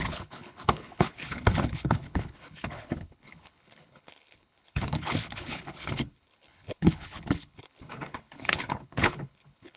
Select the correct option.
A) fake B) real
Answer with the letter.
A